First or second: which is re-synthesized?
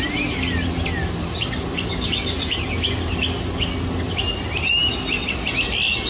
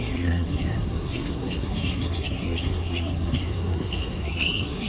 second